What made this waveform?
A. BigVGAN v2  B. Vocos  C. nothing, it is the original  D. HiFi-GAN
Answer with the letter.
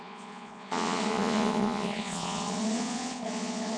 B